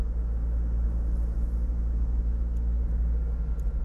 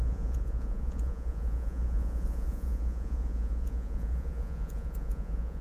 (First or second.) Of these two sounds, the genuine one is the first